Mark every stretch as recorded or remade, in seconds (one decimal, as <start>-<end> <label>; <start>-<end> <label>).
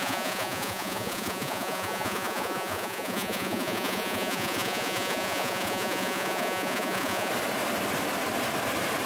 0.0-7.3 remade; 7.3-9.1 recorded